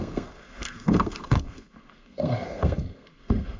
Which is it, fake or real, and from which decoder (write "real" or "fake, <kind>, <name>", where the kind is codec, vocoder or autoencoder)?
fake, codec, SNAC